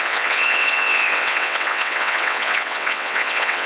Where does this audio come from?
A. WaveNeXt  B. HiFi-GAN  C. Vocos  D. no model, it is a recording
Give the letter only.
A